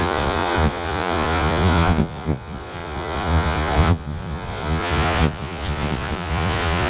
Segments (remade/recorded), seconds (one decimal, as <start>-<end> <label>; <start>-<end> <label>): 0.0-6.9 remade

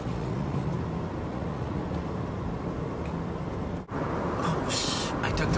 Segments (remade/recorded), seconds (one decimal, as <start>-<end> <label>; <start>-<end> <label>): 0.0-0.7 remade; 0.7-1.3 recorded; 1.3-1.8 remade; 1.8-5.6 recorded

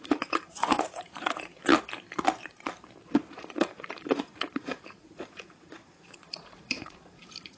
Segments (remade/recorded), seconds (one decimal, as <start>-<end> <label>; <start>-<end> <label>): 0.0-1.7 remade; 1.7-3.3 recorded; 3.3-7.6 remade